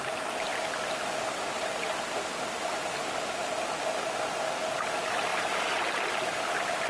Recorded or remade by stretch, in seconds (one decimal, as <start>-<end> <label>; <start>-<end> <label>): 0.0-6.9 recorded